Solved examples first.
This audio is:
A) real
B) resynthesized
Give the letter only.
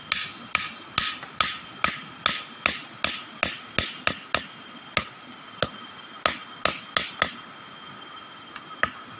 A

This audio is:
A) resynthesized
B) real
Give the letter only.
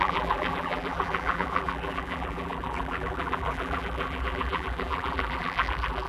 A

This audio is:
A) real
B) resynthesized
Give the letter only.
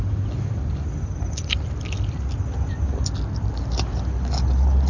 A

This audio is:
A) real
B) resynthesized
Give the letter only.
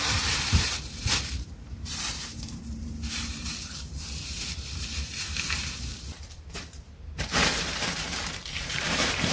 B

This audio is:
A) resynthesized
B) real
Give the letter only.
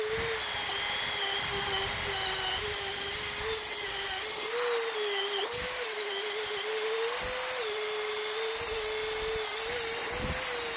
B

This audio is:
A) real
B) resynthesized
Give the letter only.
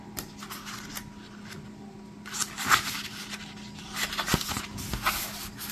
A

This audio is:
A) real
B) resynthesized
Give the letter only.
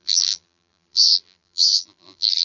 B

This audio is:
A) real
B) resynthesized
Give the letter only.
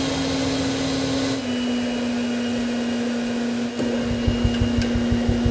A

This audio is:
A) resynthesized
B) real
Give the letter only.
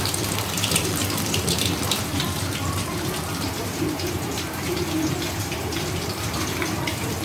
A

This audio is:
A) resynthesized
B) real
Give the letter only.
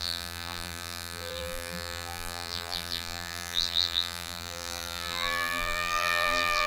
A